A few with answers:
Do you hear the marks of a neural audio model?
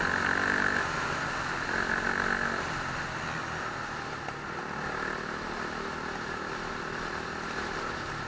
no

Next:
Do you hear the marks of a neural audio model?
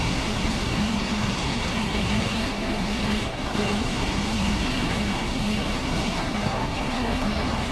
yes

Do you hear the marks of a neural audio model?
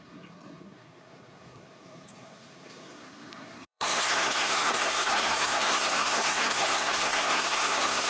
yes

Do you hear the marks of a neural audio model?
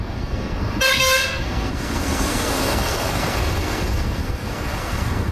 yes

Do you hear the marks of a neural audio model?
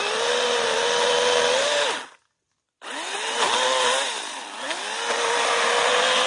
no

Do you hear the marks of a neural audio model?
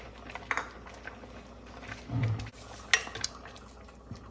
no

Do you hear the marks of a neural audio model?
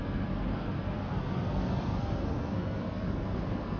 yes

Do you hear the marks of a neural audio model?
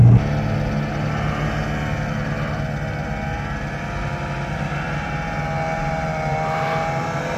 no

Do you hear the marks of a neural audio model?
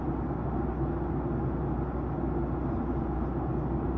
no